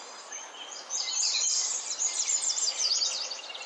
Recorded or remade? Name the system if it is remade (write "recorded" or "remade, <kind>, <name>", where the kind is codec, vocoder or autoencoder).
remade, vocoder, BigVGAN v2